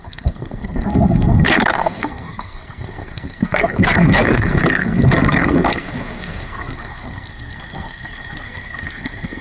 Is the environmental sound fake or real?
fake